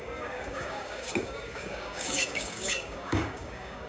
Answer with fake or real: fake